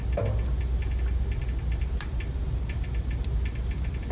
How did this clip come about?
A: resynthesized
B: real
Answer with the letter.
B